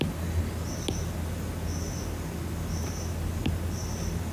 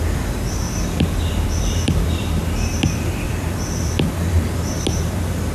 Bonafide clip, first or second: first